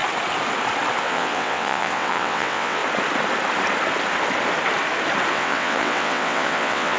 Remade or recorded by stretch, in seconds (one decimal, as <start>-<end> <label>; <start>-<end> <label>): 0.0-1.0 recorded; 1.0-2.8 remade; 2.8-5.3 recorded; 5.3-7.0 remade

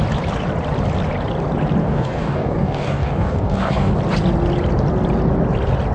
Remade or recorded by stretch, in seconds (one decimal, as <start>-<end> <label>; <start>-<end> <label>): 0.0-1.8 recorded; 1.8-3.9 remade; 3.9-5.9 recorded

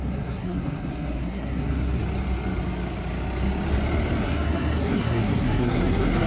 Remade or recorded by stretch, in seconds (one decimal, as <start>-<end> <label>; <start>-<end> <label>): 0.0-2.0 remade; 2.0-4.2 recorded; 4.2-6.3 remade